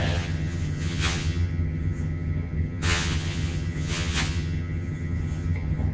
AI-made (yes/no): yes